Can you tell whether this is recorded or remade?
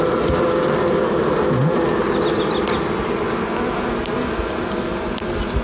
recorded